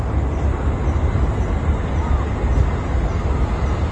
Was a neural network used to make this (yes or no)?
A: no